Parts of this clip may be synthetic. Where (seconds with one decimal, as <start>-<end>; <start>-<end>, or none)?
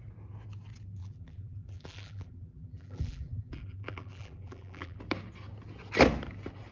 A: 1.0-5.0